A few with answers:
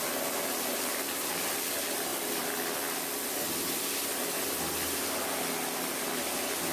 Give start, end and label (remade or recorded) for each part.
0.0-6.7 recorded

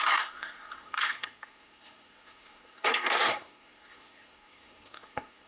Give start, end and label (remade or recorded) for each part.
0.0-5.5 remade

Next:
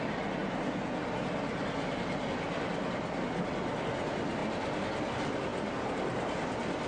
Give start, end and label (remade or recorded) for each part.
0.0-6.9 recorded

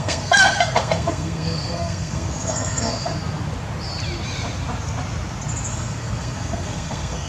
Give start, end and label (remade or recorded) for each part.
0.0-3.1 remade; 3.1-5.7 recorded; 5.7-7.3 remade

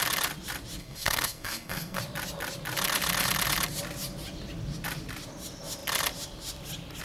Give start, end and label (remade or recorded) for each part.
0.0-0.8 recorded; 0.8-2.0 remade; 2.0-7.0 recorded